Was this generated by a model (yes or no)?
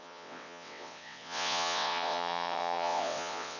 yes